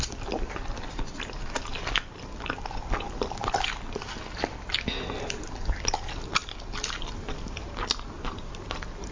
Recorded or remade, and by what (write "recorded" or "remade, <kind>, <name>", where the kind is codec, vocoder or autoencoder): recorded